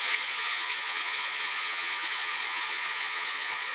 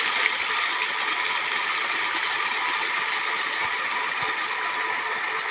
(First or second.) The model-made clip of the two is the first